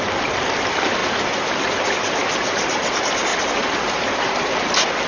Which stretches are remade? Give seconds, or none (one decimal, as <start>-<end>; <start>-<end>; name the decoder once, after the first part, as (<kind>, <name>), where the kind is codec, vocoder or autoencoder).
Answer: none